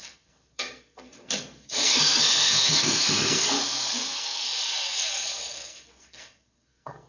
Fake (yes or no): yes